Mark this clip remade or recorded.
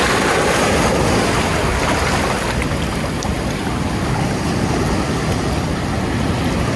recorded